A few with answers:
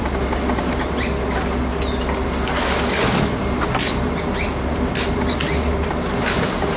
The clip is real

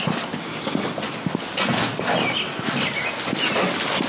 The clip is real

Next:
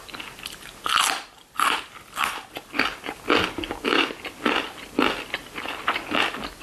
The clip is real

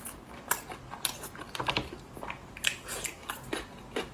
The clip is real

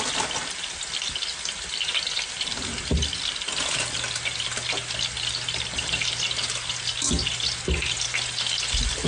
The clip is real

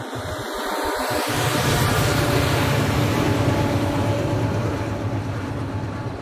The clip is fake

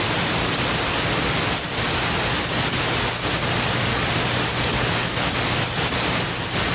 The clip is real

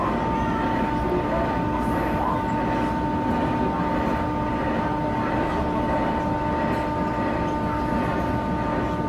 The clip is real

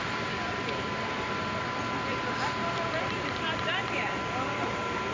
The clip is real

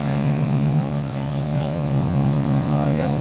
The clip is fake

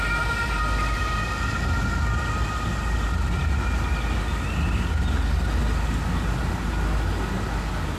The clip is real